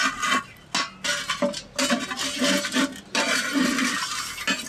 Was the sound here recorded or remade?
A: recorded